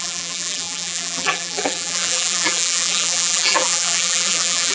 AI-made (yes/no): yes